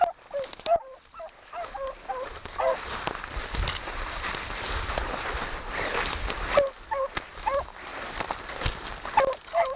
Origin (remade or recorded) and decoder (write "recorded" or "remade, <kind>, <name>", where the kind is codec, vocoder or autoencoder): recorded